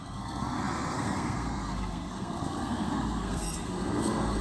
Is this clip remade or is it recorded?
remade